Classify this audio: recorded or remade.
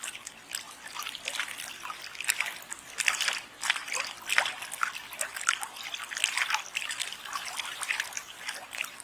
recorded